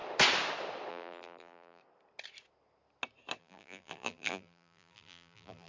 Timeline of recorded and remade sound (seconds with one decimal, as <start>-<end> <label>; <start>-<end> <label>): 0.0-0.9 recorded; 0.9-1.8 remade; 1.8-3.4 recorded; 3.4-5.7 remade